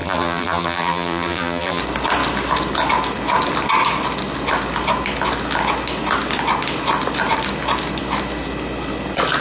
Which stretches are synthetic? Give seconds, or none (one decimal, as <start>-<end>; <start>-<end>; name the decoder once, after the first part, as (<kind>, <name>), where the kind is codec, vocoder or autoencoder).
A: 0.0-1.8 (vocoder, BigVGAN v2)